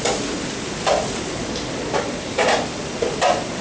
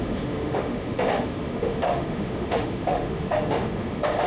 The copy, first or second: second